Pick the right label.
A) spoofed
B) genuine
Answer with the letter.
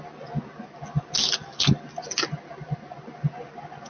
B